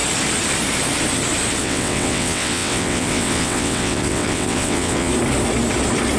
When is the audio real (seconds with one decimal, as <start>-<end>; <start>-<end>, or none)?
0.0-1.6; 5.1-6.2